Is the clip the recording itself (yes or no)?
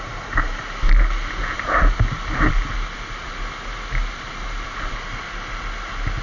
yes